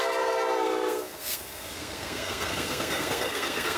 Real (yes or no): no